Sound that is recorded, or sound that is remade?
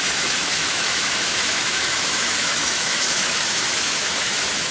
remade